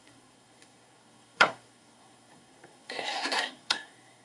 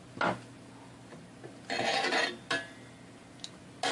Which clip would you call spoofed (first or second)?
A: first